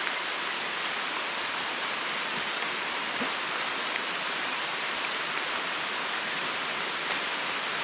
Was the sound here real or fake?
real